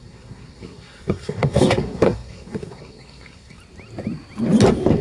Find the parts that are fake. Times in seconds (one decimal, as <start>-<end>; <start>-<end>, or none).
0.0-3.6